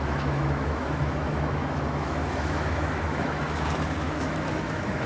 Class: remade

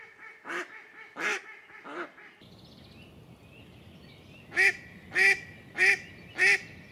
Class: recorded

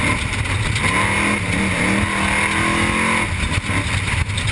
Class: recorded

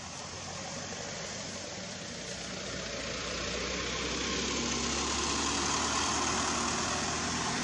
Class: recorded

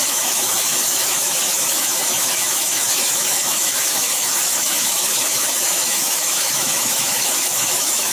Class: remade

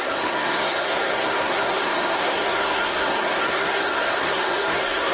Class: remade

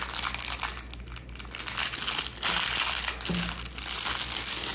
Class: recorded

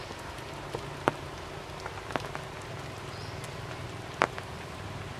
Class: recorded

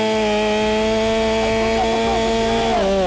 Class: recorded